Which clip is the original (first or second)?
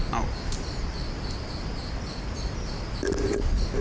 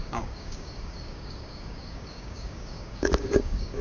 first